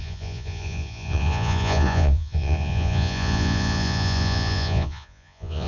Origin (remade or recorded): remade